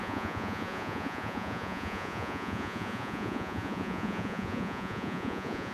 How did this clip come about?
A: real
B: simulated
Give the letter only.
B